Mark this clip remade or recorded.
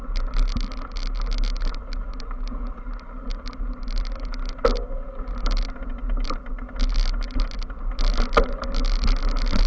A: recorded